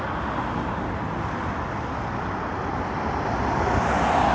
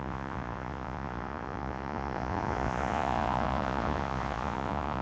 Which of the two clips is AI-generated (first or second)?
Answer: second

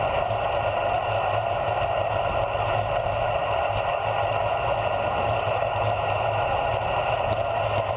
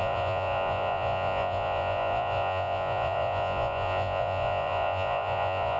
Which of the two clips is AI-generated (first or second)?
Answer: second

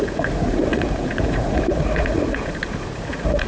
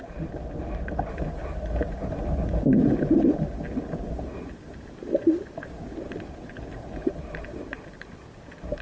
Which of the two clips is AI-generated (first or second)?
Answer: first